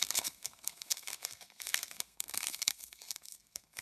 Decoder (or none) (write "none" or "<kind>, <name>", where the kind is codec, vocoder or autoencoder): codec, SNAC